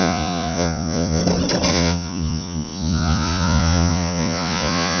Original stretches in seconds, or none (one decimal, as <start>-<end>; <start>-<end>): 1.2-1.7